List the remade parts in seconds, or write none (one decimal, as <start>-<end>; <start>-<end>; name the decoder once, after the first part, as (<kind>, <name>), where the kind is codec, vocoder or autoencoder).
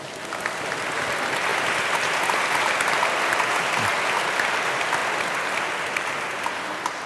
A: 1.5-2.2 (vocoder, BigVGAN v2)